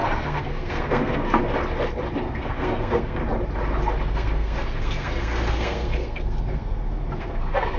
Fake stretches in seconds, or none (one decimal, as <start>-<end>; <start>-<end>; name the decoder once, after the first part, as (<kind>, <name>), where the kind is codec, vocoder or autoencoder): 0.0-1.4 (codec, SNAC); 2.2-3.2; 4.1-7.8